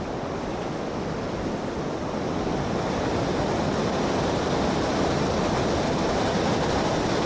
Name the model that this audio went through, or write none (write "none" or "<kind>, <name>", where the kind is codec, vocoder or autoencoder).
none